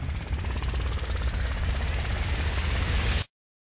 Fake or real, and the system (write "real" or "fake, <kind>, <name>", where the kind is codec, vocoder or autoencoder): fake, codec, DAC